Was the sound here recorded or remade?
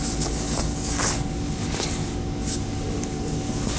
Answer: remade